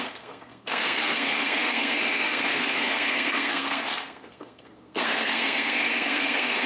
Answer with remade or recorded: remade